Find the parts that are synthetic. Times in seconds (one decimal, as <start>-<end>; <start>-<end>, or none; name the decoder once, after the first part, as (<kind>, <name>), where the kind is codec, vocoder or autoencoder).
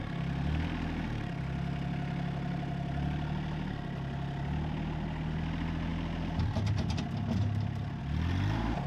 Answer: none